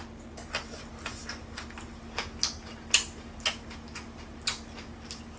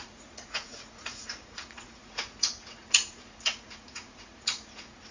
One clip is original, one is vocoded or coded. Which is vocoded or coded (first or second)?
second